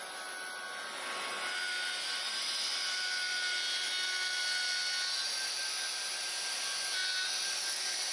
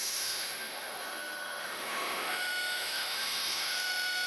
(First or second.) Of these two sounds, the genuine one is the first